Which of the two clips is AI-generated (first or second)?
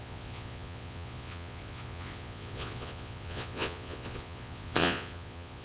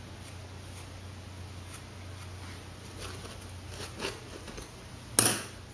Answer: first